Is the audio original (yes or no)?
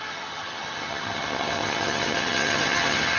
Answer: no